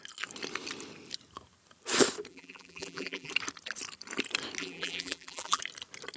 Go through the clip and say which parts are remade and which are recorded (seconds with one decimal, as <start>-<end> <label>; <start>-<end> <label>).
0.0-2.3 recorded; 2.3-3.3 remade; 3.3-4.6 recorded; 4.6-5.6 remade; 5.6-6.2 recorded